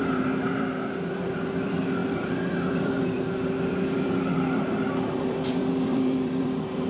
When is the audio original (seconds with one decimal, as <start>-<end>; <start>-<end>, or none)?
none